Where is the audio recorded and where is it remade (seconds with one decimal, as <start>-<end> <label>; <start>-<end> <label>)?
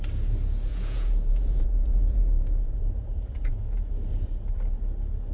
0.0-0.7 recorded; 0.7-3.9 remade; 3.9-5.3 recorded